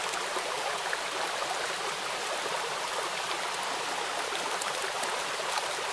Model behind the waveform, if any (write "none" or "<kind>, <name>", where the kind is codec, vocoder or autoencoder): none